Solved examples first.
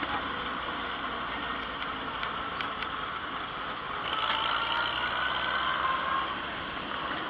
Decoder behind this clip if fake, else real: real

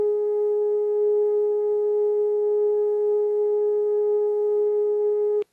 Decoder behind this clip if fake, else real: fake, codec, DAC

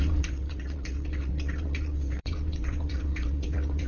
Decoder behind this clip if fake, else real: fake, vocoder, WaveNeXt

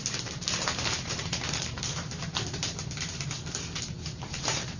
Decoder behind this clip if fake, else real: fake, vocoder, BigVGAN v2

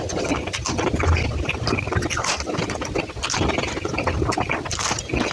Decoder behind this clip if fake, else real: real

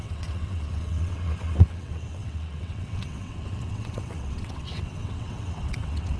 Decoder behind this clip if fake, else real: fake, vocoder, WaveNeXt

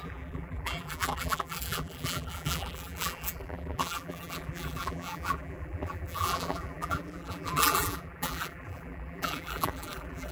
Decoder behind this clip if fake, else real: fake, vocoder, BigVGAN v2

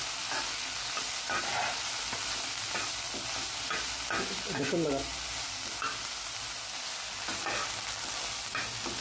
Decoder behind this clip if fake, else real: real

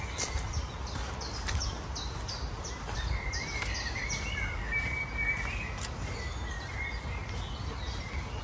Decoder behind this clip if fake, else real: real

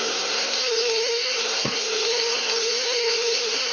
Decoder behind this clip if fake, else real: fake, codec, SNAC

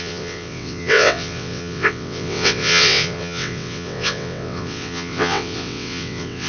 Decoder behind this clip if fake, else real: fake, vocoder, WaveNeXt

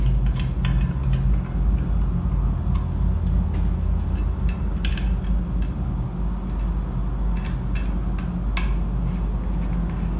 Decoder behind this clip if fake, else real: real